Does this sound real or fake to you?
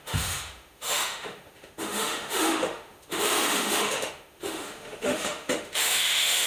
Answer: fake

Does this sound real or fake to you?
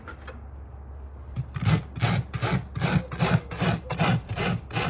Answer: real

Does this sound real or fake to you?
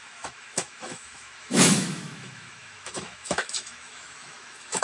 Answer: fake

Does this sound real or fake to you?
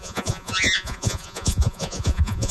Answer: fake